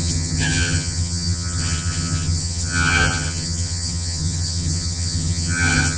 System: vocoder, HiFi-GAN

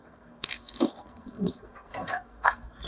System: codec, SNAC